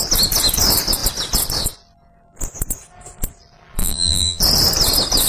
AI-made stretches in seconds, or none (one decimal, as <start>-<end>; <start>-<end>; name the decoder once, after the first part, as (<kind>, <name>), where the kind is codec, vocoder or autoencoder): 3.8-4.4 (vocoder, BigVGAN v2)